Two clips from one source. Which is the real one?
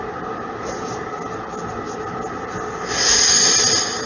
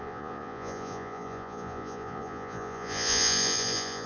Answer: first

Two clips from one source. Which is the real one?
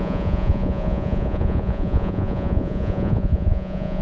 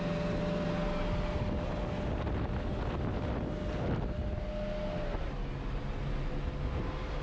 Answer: second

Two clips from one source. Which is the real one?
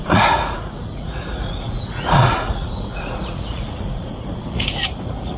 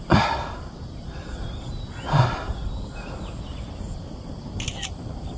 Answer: second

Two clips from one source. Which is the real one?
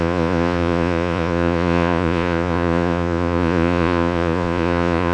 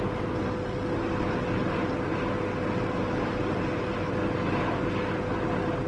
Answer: second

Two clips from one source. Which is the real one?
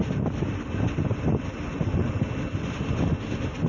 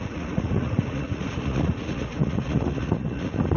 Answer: first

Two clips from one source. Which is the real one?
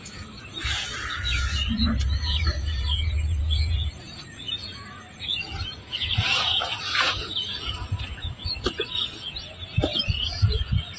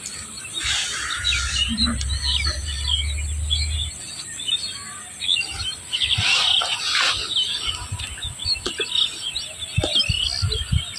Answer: second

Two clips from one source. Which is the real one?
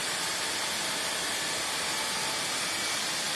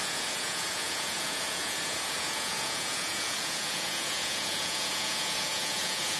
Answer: first